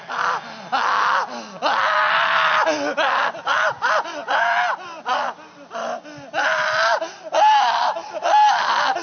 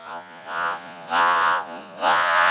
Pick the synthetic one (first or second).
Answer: second